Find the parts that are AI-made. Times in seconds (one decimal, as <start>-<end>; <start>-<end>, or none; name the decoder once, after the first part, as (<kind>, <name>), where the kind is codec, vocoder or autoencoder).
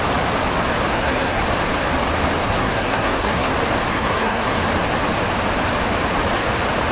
0.9-1.4 (codec, SNAC); 2.4-3.5; 3.9-4.6